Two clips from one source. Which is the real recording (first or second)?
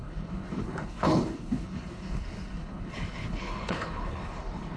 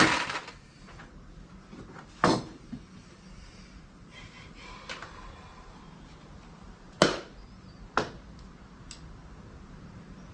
second